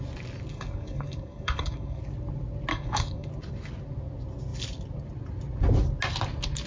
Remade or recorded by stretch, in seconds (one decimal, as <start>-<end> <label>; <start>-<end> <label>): 0.0-0.5 recorded; 0.5-2.0 remade; 2.0-2.7 recorded; 2.7-3.3 remade; 3.3-6.7 recorded